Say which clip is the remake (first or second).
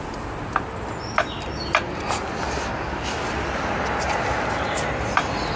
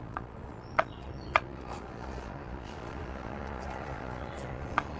second